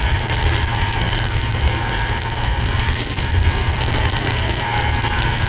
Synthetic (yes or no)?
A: yes